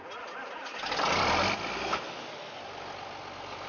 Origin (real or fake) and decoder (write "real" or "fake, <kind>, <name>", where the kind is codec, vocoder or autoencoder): real